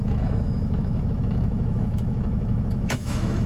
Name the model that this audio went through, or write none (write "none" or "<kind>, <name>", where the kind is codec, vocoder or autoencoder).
autoencoder, DAC-VAE